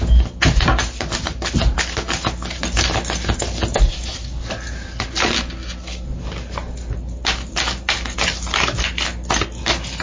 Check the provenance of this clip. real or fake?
real